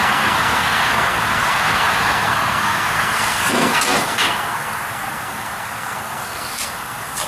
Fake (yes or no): yes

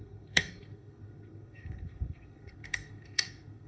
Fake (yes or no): yes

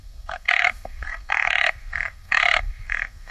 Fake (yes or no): yes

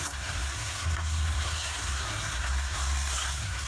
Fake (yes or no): yes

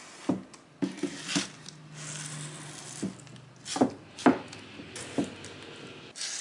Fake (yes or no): no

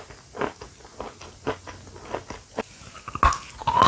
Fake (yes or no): no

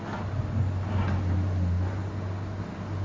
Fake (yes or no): no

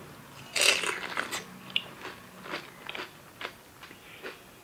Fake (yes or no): no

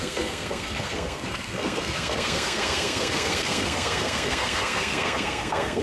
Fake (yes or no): yes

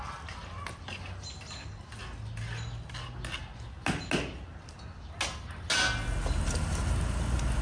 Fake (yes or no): no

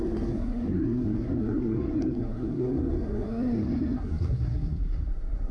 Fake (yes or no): yes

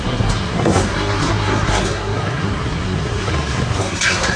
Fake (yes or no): yes